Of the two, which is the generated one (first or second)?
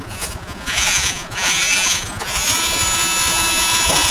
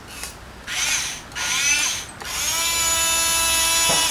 first